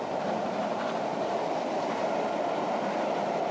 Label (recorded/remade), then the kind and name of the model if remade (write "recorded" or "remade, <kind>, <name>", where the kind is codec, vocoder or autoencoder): recorded